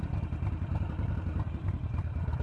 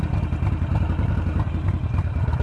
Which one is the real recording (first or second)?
second